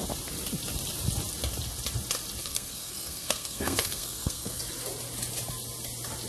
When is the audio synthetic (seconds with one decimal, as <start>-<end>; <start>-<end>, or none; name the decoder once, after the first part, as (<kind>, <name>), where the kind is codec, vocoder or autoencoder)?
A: 2.4-4.6 (codec, SNAC)